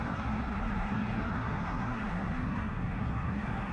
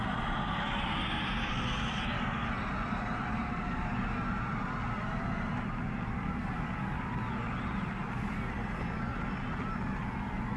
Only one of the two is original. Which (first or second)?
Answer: second